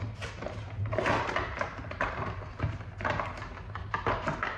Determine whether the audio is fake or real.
real